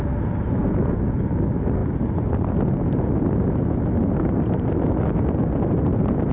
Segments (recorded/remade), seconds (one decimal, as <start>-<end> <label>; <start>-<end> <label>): 0.0-6.3 recorded